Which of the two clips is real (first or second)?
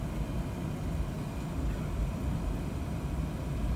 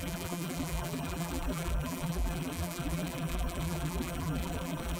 first